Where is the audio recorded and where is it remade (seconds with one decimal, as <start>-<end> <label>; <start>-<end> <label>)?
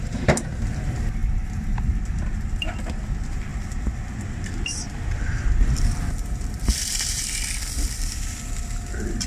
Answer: 0.0-1.2 remade; 1.2-2.1 recorded; 2.1-9.3 remade